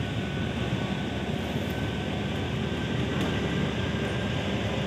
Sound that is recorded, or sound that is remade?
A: recorded